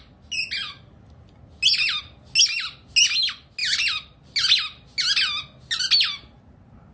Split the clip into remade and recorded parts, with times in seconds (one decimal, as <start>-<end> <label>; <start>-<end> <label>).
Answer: 0.0-6.9 recorded